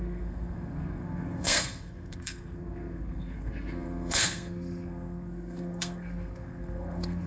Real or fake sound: fake